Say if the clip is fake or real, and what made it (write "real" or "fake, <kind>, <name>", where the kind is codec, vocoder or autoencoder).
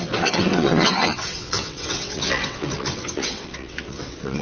fake, vocoder, WaveNeXt